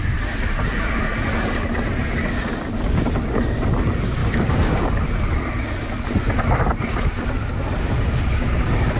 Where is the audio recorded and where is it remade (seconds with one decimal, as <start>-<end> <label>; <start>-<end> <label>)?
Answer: 0.0-4.2 recorded; 4.2-4.9 remade; 4.9-9.0 recorded